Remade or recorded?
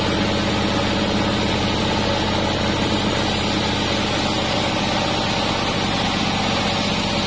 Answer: recorded